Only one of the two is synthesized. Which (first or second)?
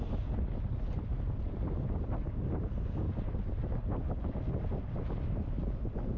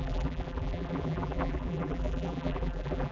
second